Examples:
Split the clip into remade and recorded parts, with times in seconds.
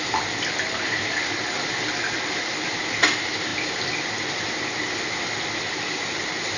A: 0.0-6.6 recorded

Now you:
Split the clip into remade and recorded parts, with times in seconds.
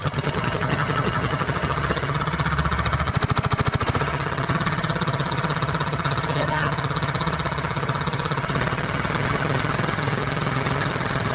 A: 0.0-3.1 remade; 3.1-4.0 recorded; 4.0-11.3 remade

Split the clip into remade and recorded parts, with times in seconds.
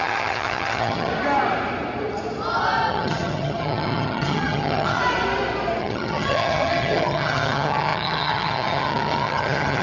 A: 0.0-1.1 remade; 1.1-2.9 recorded; 2.9-5.0 remade; 5.0-5.8 recorded; 5.8-9.8 remade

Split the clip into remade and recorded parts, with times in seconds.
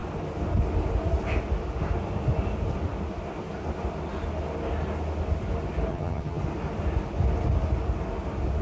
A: 0.0-5.9 recorded; 5.9-6.4 remade; 6.4-8.6 recorded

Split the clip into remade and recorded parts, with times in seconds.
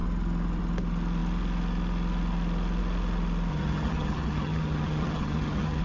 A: 0.0-3.5 recorded; 3.5-5.8 remade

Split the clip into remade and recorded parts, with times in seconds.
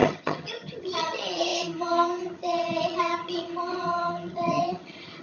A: 0.0-5.2 remade